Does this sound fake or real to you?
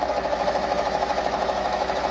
fake